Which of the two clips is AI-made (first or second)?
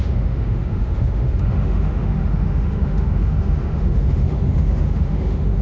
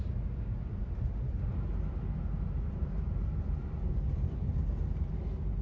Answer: first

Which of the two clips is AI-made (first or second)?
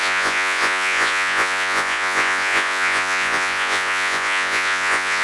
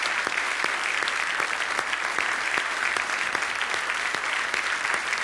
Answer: first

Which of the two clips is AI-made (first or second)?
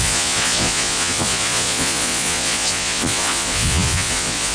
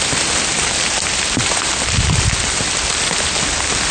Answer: first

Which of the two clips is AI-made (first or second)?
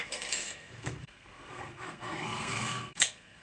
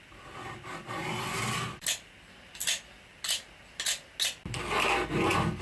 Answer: first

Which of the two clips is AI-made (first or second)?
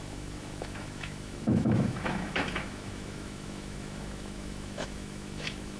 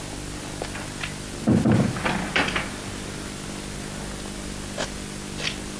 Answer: first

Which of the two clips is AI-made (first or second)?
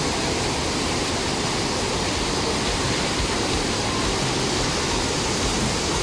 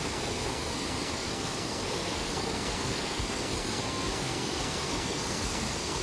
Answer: second